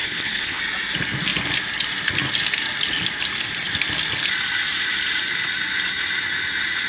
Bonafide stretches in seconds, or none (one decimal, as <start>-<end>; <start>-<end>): 0.6-6.9